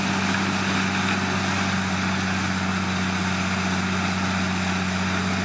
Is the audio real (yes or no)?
yes